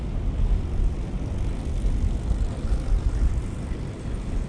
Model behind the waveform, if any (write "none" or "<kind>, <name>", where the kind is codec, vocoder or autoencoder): none